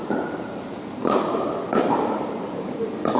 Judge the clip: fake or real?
fake